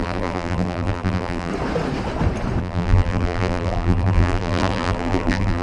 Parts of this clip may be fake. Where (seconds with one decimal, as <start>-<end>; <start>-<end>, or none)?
0.0-1.5; 2.6-5.6